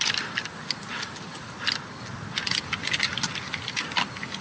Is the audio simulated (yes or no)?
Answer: no